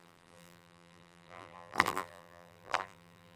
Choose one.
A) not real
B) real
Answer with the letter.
A